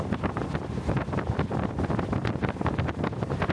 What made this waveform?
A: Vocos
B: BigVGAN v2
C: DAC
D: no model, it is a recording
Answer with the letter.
D